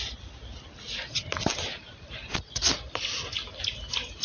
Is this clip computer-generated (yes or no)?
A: no